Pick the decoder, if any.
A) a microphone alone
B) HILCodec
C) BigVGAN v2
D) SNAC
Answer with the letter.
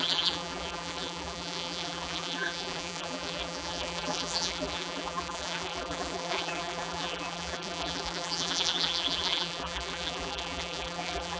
C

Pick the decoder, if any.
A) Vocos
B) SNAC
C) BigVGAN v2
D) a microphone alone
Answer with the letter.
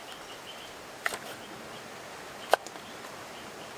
D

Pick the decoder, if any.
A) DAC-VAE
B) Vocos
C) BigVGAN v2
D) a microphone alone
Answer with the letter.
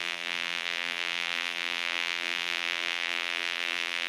C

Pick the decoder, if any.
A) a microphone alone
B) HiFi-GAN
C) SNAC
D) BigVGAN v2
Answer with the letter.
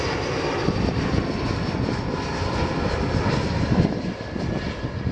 D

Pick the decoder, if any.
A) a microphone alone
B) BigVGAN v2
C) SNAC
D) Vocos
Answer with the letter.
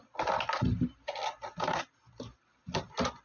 A